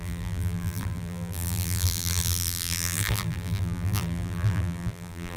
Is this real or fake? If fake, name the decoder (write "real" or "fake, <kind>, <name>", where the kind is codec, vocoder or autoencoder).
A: fake, vocoder, BigVGAN v2